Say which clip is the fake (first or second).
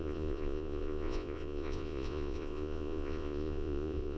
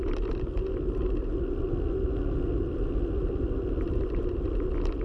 first